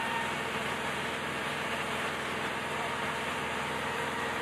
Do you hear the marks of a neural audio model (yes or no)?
yes